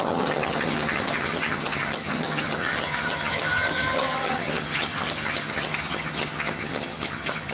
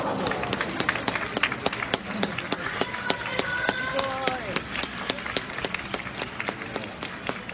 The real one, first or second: second